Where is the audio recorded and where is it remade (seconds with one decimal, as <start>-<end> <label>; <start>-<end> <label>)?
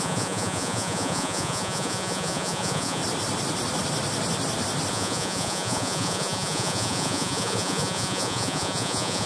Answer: 0.0-3.0 remade; 3.0-4.9 recorded; 4.9-9.3 remade